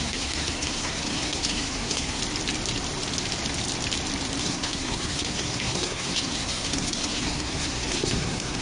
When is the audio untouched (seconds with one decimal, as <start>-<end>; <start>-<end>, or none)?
2.2-4.4